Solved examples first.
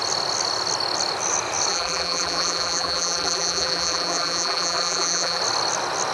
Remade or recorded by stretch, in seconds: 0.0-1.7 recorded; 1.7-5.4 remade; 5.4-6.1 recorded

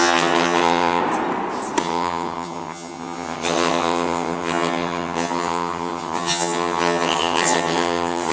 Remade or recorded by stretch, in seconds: 0.0-1.0 remade; 1.0-1.8 recorded; 1.8-8.3 remade

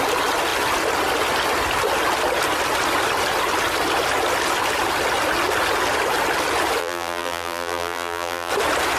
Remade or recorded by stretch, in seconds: 0.0-6.8 recorded; 6.8-8.5 remade; 8.5-9.0 recorded

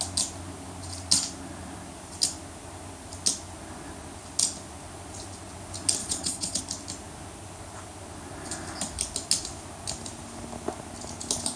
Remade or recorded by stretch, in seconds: 0.0-6.0 recorded; 6.0-6.6 remade; 6.6-11.6 recorded

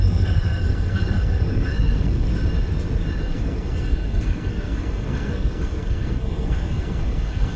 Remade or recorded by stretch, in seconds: 0.0-2.3 remade; 2.3-3.2 recorded; 3.2-7.6 remade

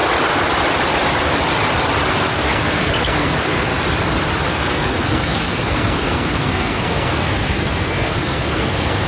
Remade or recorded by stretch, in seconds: 0.0-2.1 recorded; 2.1-3.7 remade; 3.7-4.5 recorded; 4.5-9.1 remade

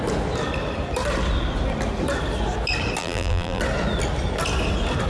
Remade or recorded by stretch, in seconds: 0.0-3.0 recorded; 3.0-3.6 remade; 3.6-5.1 recorded